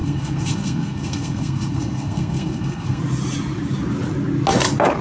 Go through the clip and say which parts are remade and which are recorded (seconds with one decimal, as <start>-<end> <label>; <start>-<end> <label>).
0.0-3.0 remade; 3.0-5.0 recorded